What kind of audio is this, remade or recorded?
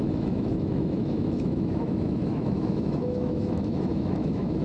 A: remade